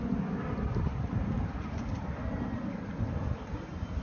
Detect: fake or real real